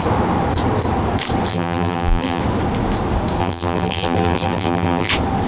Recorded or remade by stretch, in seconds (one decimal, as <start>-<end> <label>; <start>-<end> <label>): 0.0-1.5 recorded; 1.5-2.4 remade; 2.4-3.4 recorded; 3.4-5.1 remade; 5.1-5.5 recorded